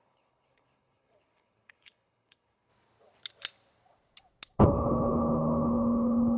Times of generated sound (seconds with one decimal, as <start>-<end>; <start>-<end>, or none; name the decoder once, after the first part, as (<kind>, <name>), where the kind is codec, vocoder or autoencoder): 0.0-2.7 (codec, HILCodec); 4.6-6.4